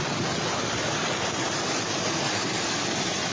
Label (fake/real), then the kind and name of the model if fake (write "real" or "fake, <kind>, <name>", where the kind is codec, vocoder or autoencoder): real